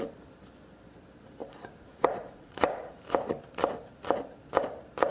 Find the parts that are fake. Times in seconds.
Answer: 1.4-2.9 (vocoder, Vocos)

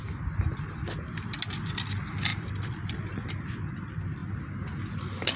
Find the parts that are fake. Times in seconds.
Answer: none

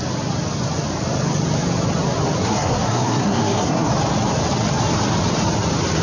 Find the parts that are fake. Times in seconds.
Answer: 2.4-3.9 (codec, SNAC)

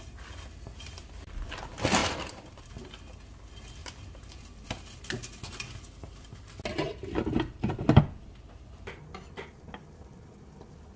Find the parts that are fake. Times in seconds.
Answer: 2.0-2.7 (vocoder, BigVGAN v2); 3.8-4.4